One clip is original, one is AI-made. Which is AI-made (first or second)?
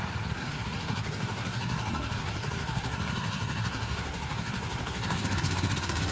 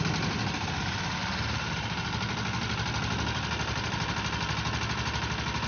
first